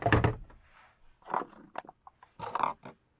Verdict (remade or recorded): recorded